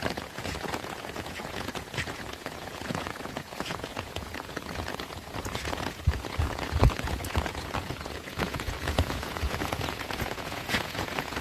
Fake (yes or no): yes